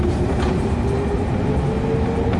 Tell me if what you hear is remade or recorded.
recorded